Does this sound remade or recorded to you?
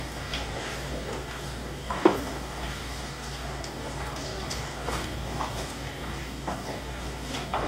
remade